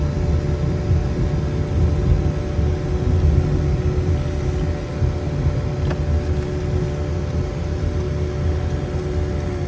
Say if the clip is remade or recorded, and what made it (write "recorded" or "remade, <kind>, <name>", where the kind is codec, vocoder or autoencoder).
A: recorded